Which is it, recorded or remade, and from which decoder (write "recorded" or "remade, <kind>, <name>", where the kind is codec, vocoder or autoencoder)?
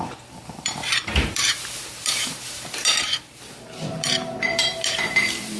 remade, vocoder, BigVGAN v2